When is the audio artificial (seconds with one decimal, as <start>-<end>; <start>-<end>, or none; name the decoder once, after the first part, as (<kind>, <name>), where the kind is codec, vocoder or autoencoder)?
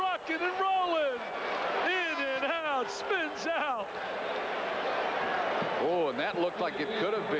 none